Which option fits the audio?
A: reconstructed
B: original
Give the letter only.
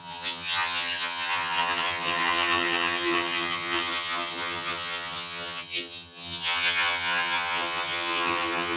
A